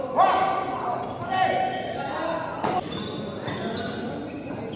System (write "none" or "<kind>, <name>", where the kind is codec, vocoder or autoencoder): none